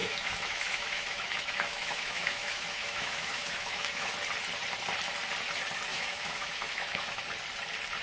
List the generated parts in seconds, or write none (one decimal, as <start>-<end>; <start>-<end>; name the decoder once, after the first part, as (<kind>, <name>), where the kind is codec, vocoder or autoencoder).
0.0-4.1 (autoencoder, DAC-VAE); 5.9-7.2